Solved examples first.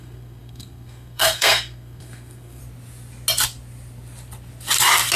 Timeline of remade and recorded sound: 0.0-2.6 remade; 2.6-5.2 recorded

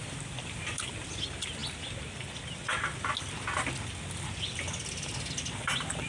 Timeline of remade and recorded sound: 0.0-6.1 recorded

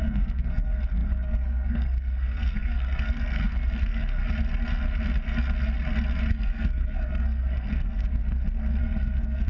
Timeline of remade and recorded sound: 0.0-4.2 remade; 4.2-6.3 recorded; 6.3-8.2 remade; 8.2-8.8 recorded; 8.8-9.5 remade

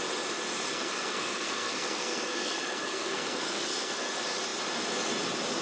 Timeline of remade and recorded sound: 0.0-0.7 recorded; 0.7-4.1 remade; 4.1-5.6 recorded

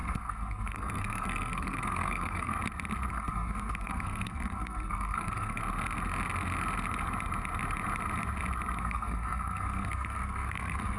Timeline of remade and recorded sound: 0.0-2.5 remade; 2.5-3.1 recorded; 3.1-5.6 remade; 5.6-8.8 recorded; 8.8-11.0 remade

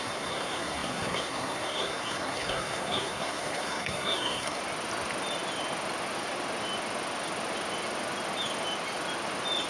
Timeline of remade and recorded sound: 0.0-4.6 remade; 4.6-9.7 recorded